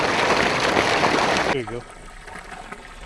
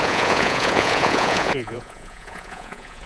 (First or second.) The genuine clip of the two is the first